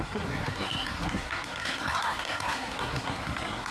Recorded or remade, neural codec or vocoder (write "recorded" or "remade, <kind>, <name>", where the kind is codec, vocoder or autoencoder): remade, codec, SNAC